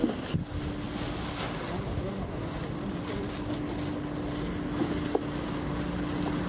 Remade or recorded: recorded